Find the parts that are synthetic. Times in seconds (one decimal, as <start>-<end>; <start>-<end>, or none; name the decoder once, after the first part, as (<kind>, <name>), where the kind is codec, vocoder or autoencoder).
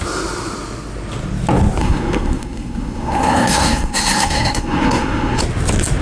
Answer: 1.8-5.4 (codec, SNAC)